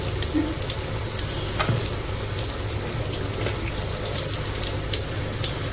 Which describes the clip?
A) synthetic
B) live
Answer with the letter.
B